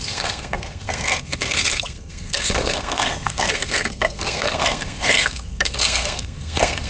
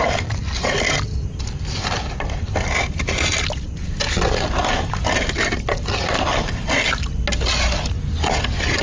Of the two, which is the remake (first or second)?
first